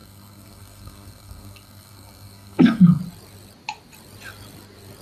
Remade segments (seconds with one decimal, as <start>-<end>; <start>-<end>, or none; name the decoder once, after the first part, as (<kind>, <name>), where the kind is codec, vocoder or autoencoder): 0.0-3.0 (codec, SNAC)